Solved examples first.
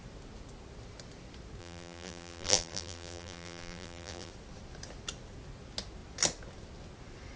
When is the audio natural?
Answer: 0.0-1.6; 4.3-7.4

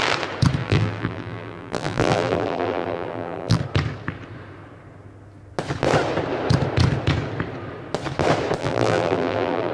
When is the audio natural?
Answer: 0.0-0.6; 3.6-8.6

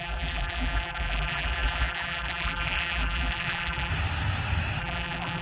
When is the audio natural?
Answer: 3.9-4.8

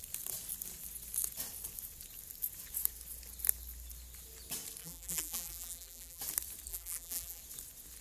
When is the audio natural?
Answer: 0.0-4.8; 6.2-6.7; 7.4-8.0

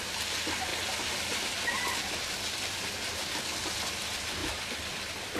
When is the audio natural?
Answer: 0.0-5.4